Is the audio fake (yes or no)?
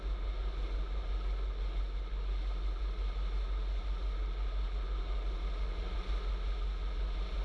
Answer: no